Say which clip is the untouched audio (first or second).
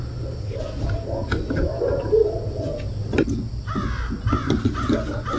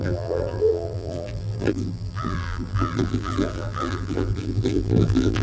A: first